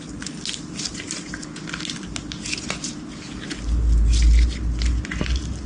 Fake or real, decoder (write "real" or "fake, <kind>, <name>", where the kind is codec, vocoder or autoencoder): real